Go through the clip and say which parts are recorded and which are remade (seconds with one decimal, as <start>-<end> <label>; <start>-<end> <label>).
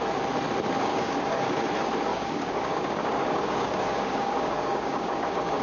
0.0-0.9 recorded; 0.9-1.6 remade; 1.6-2.1 recorded; 2.1-5.6 remade